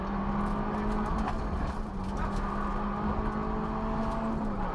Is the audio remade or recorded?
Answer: recorded